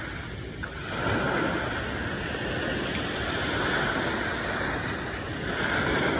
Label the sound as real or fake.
real